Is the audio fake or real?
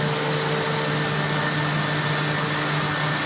real